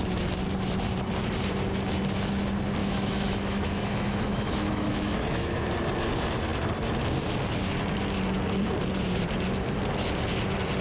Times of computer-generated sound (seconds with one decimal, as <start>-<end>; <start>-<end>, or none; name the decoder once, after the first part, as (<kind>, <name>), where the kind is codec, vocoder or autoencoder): 2.8-5.6 (autoencoder, DAC-VAE)